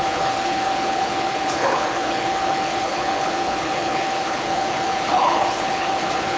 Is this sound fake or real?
fake